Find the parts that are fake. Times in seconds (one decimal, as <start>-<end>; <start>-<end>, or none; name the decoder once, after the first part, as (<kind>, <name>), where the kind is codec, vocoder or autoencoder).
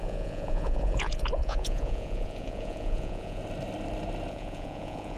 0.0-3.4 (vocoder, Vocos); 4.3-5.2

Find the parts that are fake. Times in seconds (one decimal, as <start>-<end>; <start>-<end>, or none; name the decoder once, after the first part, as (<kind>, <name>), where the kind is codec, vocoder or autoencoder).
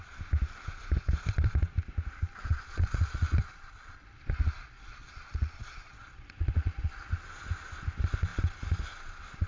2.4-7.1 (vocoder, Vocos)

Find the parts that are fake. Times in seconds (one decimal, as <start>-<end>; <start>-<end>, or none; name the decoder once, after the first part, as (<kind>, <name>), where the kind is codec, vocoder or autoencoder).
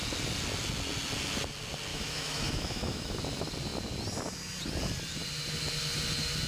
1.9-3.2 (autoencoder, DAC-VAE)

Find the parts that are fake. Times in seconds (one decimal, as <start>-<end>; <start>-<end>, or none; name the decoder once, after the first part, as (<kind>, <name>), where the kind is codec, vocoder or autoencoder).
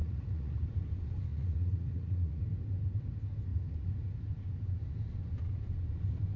0.0-0.6 (vocoder, Vocos); 1.3-2.4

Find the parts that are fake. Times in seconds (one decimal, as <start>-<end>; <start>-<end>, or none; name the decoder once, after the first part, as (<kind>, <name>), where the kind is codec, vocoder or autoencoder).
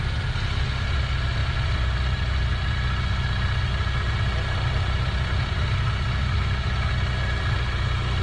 6.2-6.9 (autoencoder, DAC-VAE)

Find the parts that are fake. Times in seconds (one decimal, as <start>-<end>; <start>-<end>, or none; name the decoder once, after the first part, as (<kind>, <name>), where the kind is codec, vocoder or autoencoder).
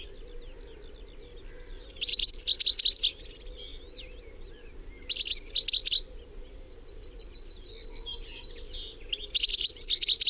none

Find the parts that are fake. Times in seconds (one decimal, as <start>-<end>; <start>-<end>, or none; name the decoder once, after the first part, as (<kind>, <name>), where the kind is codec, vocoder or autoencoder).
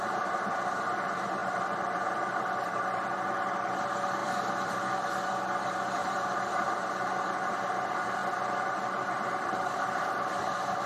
1.4-3.1 (vocoder, BigVGAN v2); 4.2-4.8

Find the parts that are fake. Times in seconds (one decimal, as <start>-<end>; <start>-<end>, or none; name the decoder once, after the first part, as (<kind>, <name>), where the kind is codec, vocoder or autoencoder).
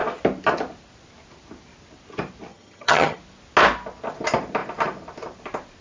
2.5-3.2 (vocoder, HiFi-GAN)